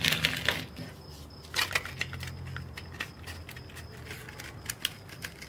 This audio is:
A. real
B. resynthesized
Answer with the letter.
A